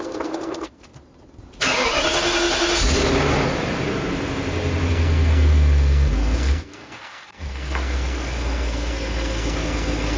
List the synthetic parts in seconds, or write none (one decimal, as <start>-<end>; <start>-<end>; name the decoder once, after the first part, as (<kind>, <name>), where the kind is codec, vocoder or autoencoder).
0.0-0.9 (codec, SNAC); 4.9-10.2